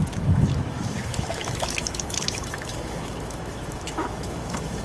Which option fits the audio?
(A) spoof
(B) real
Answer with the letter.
A